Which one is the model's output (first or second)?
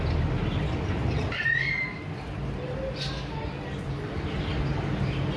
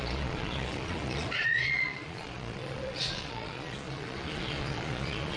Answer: second